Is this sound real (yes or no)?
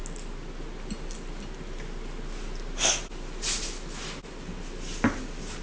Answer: yes